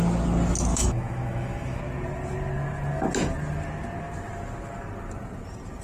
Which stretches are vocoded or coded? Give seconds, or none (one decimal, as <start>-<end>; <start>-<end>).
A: 0.7-1.8